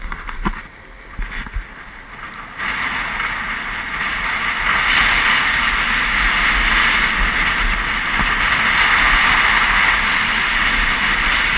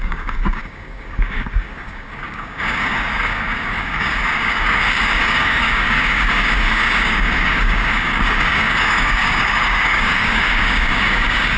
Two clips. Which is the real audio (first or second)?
first